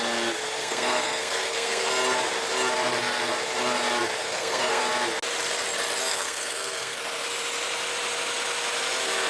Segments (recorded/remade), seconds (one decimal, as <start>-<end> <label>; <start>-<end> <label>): 0.0-0.6 recorded; 0.6-1.9 remade; 1.9-4.2 recorded; 4.2-4.8 remade; 4.8-6.1 recorded; 6.1-7.0 remade; 7.0-9.3 recorded